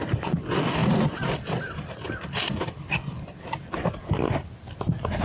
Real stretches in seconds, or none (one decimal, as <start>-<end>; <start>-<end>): 0.0-5.2